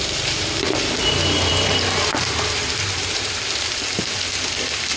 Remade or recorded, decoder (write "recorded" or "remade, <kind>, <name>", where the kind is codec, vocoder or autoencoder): remade, vocoder, BigVGAN v2